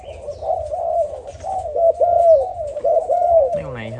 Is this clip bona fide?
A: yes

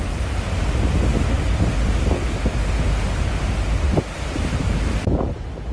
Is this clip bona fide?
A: yes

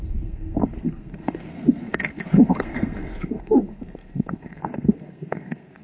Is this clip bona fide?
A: no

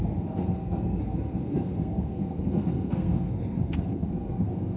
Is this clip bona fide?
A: no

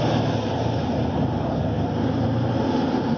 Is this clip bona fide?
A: yes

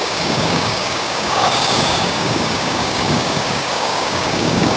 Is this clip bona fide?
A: no